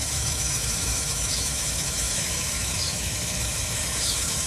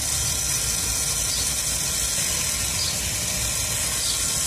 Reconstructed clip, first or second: first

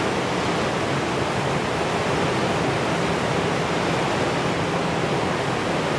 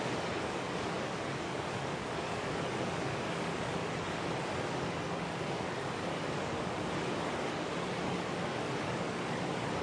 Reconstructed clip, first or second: second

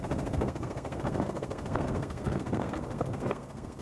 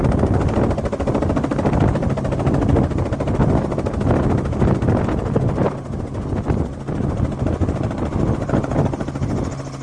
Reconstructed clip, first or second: first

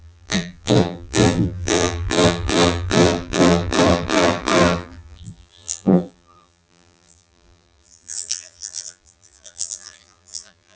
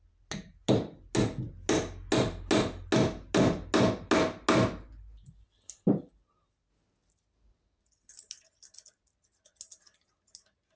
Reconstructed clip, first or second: first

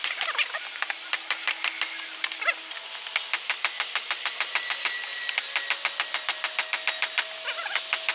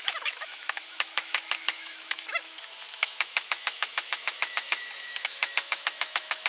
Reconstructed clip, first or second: second